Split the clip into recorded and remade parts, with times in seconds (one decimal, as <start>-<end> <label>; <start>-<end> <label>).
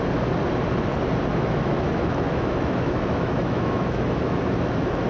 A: 0.0-1.3 recorded; 1.3-4.4 remade; 4.4-5.1 recorded